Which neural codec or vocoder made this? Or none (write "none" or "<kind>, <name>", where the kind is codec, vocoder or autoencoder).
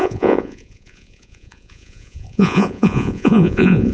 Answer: vocoder, Vocos